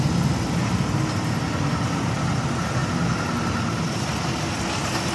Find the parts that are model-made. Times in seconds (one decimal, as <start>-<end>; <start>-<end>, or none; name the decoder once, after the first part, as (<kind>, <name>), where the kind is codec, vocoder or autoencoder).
none